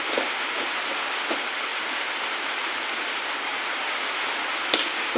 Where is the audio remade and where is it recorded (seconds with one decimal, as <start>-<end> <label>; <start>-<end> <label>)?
0.0-5.2 recorded